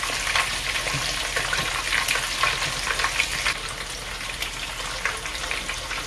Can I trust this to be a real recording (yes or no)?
yes